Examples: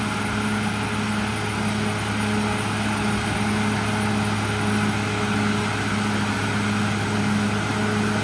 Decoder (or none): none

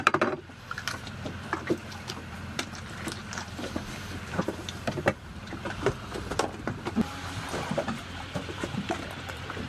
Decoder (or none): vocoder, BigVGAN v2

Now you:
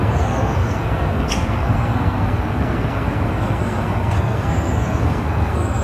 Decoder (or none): codec, SNAC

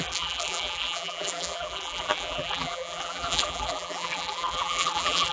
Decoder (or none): vocoder, BigVGAN v2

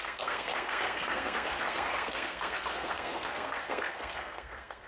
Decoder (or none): codec, SNAC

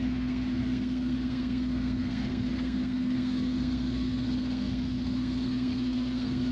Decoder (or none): codec, SNAC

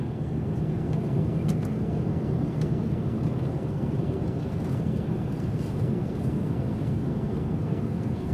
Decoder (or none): codec, SNAC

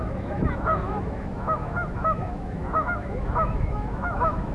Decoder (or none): autoencoder, DAC-VAE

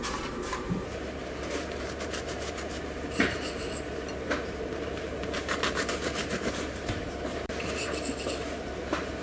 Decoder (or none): vocoder, BigVGAN v2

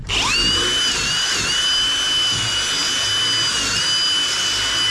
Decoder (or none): none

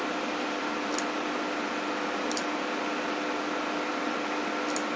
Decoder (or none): none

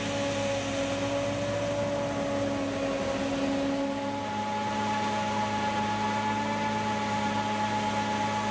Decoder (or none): none